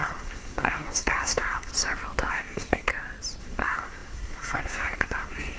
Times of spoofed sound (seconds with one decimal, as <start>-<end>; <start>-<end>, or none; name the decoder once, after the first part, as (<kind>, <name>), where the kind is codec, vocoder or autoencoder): 0.0-1.7 (codec, SNAC); 2.3-2.9; 3.4-5.6